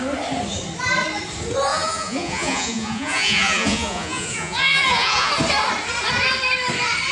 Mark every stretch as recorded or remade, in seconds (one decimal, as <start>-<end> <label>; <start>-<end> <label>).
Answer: 0.0-1.7 recorded; 1.7-5.3 remade; 5.3-7.1 recorded